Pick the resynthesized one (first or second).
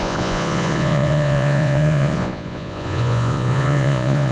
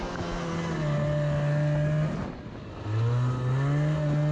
first